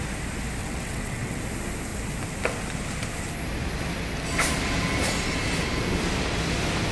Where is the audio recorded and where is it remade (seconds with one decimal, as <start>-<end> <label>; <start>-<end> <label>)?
0.0-0.6 recorded; 0.6-1.4 remade; 1.4-6.9 recorded